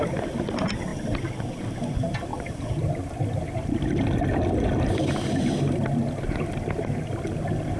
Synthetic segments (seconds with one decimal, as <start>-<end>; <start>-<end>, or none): none